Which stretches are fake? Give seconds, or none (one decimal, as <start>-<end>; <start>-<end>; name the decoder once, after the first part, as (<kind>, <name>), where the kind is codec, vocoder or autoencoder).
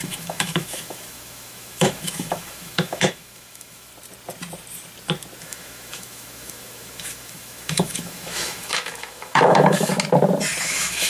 0.0-3.9 (autoencoder, DAC-VAE); 5.4-9.9; 10.6-11.1